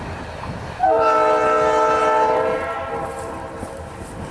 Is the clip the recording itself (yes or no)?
no